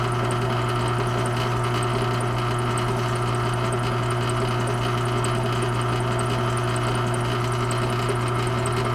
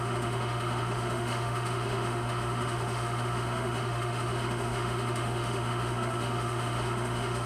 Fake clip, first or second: second